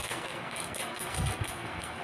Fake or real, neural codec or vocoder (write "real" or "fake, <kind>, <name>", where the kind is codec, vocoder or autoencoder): fake, codec, SNAC